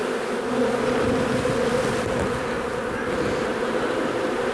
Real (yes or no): yes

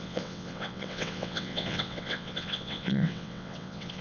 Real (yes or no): no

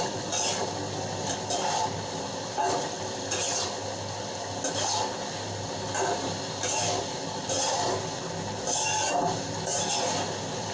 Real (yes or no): yes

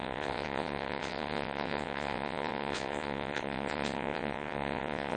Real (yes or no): no